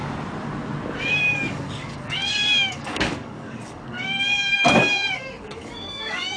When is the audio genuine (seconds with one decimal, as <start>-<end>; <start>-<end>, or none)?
0.0-1.0